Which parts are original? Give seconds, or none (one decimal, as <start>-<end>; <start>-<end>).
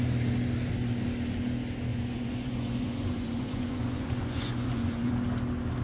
0.0-1.9; 5.1-5.8